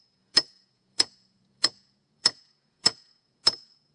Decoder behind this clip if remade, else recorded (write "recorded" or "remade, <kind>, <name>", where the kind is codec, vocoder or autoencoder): remade, vocoder, Vocos